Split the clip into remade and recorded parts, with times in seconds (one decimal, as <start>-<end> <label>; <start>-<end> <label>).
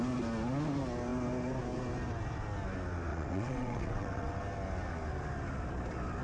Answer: 0.0-3.1 recorded; 3.1-4.4 remade; 4.4-6.2 recorded